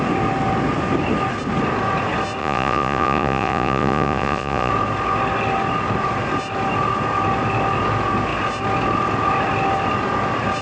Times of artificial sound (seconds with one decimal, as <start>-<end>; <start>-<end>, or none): 2.4-4.7

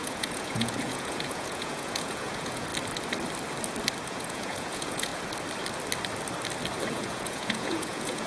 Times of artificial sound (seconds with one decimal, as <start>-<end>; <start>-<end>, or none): 0.0-2.7; 4.1-5.1; 6.9-8.3

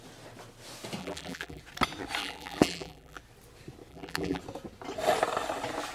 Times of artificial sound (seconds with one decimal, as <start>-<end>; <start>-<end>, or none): 1.0-1.6; 2.2-3.2; 3.9-4.4

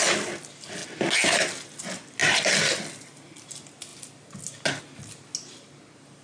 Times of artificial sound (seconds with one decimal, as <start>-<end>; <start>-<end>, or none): none

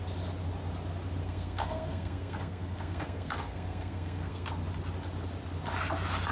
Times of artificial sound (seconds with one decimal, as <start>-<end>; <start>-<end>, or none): 1.2-4.5